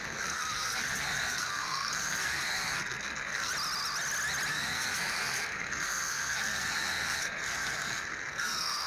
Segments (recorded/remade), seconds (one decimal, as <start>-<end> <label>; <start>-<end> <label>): 0.0-3.5 remade; 3.5-4.5 recorded; 4.5-8.9 remade